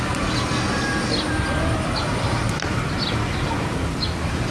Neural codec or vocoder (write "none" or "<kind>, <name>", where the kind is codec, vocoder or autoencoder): none